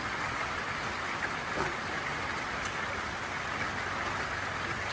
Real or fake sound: real